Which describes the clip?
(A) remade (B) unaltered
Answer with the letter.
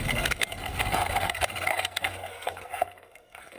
A